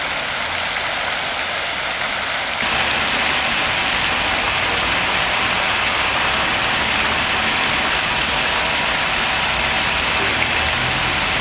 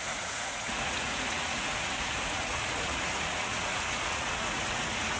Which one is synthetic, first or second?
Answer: second